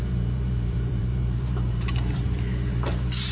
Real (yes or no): no